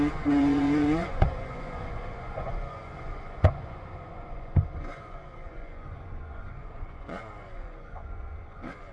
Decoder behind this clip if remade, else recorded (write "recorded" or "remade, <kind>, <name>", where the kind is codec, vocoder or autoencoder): remade, vocoder, Vocos